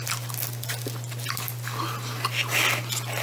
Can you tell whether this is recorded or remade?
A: recorded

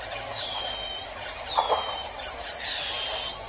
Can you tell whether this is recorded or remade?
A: recorded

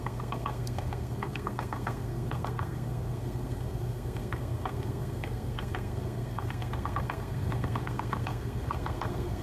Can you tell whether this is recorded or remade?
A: remade